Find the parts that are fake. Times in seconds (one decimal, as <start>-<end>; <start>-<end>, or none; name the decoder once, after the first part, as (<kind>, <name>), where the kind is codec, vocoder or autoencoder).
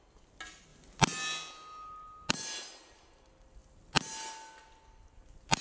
none